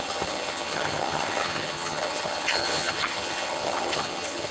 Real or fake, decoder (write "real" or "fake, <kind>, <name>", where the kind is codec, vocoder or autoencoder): fake, vocoder, HiFi-GAN